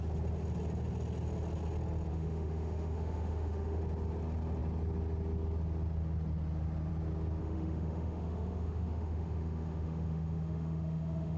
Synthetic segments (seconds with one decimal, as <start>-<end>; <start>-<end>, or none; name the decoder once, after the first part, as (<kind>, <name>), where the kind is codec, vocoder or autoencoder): 2.1-3.8 (autoencoder, DAC-VAE); 7.4-11.4